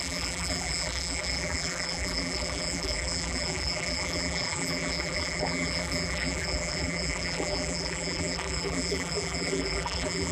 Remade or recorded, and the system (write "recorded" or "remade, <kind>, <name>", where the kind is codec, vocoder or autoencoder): remade, vocoder, BigVGAN v2